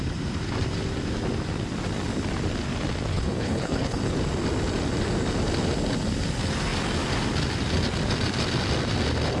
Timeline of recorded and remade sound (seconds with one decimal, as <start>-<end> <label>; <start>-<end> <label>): 0.0-3.1 recorded; 3.1-4.0 remade; 4.0-9.4 recorded